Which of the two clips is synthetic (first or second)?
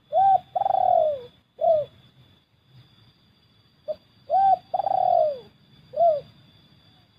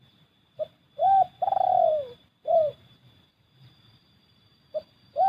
second